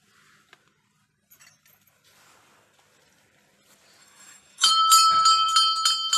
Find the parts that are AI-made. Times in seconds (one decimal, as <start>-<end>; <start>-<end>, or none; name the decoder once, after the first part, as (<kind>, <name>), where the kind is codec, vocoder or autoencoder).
4.0-4.7 (autoencoder, DAC-VAE)